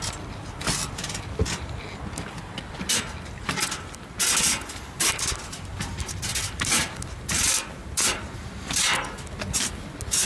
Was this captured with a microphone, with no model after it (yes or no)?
yes